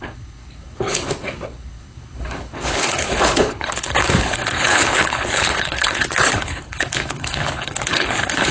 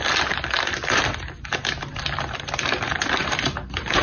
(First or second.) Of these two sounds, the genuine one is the second